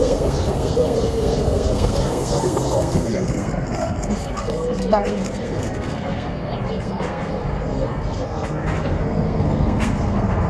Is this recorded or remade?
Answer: remade